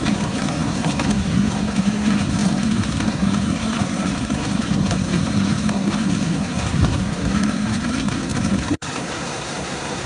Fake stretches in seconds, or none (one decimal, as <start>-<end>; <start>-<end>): 0.0-10.1